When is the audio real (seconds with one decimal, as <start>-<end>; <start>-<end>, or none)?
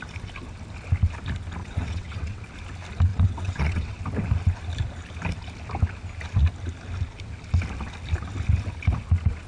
0.0-1.6; 2.4-3.1; 4.0-9.5